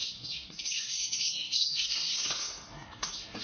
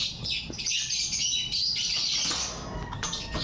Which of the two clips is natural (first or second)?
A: second